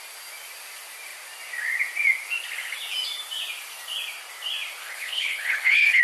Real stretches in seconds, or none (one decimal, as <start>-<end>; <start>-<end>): 0.0-4.8